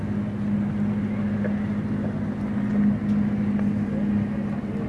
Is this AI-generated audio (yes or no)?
no